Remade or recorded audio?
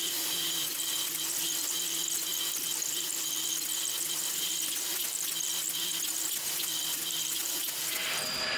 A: recorded